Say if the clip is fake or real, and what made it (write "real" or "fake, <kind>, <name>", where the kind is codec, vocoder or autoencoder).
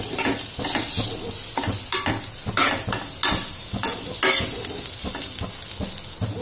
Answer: real